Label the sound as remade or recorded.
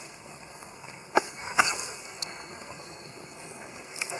remade